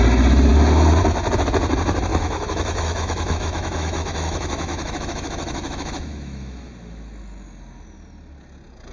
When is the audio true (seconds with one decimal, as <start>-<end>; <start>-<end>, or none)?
0.0-2.1; 6.7-8.9